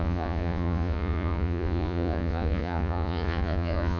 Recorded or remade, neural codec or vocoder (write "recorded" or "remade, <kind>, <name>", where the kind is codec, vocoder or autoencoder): remade, vocoder, Vocos